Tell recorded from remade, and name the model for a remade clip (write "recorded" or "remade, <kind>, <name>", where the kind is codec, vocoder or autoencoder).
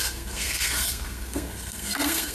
remade, codec, SNAC